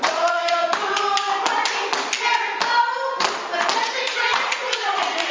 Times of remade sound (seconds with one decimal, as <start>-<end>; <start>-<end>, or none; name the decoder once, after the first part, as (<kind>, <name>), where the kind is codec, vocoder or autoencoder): 0.0-0.6 (vocoder, Vocos); 3.8-5.3